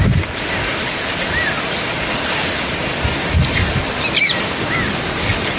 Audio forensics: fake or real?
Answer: real